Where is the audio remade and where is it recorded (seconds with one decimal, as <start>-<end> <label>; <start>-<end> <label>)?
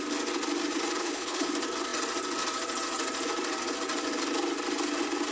0.0-1.0 recorded; 1.0-1.5 remade; 1.5-5.3 recorded